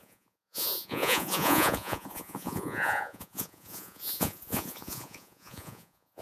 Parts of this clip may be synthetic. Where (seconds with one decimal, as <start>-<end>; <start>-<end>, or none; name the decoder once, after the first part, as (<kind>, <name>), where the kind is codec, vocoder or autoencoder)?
0.0-6.2 (vocoder, Vocos)